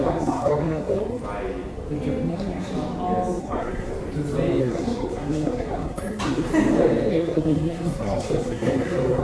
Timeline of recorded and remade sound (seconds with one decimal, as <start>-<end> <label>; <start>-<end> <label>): 0.0-1.2 remade; 1.2-2.3 recorded; 2.3-2.7 remade; 2.7-3.4 recorded; 3.4-3.9 remade; 3.9-4.6 recorded; 4.6-6.5 remade; 6.5-7.1 recorded; 7.1-9.2 remade